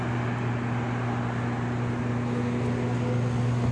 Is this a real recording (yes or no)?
yes